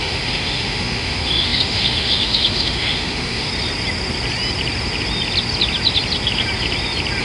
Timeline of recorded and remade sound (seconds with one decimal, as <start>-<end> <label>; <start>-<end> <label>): 0.0-3.5 remade; 3.5-7.2 recorded